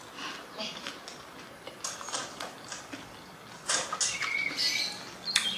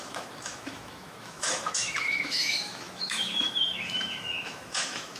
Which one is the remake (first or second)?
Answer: second